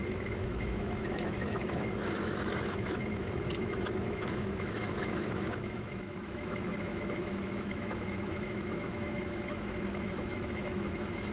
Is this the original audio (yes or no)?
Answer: no